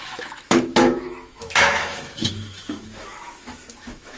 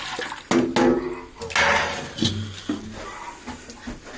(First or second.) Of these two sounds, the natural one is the second